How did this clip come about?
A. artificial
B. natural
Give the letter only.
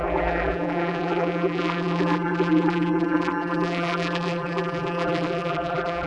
A